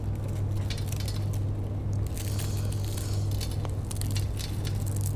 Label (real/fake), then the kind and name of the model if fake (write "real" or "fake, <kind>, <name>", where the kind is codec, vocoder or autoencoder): real